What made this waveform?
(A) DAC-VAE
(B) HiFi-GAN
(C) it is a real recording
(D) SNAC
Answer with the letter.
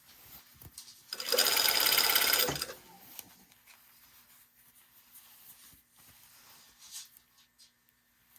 C